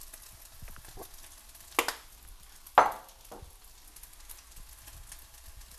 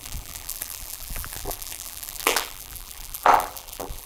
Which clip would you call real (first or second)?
first